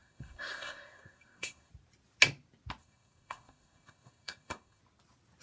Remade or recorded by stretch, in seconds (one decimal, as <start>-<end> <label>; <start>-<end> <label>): 0.0-1.7 remade; 1.7-2.8 recorded; 2.8-4.8 remade; 4.8-5.4 recorded